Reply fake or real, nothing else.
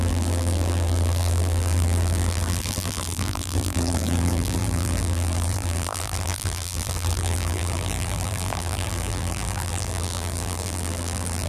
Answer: fake